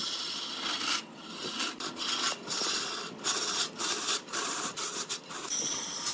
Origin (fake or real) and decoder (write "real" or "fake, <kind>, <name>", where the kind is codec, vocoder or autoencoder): real